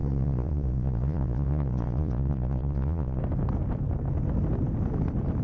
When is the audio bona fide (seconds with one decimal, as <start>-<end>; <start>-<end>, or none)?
3.2-5.4